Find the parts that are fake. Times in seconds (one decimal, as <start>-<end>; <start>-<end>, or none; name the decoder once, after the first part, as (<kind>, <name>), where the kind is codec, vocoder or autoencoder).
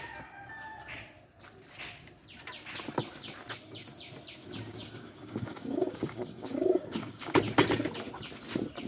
4.7-7.4 (codec, DAC)